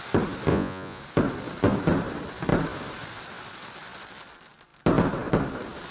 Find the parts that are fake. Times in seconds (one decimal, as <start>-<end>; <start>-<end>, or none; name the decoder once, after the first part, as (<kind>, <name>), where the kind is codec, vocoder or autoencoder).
0.5-1.0 (vocoder, Vocos)